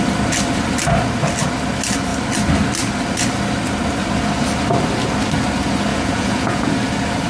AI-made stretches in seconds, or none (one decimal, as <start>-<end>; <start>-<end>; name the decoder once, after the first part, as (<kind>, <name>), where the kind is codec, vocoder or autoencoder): 5.9-6.7 (vocoder, Vocos)